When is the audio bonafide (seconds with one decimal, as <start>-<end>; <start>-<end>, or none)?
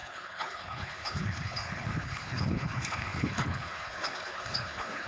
none